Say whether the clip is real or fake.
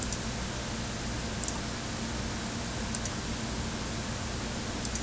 real